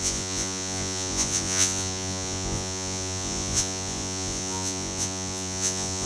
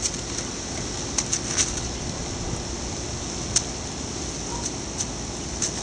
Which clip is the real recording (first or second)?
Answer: second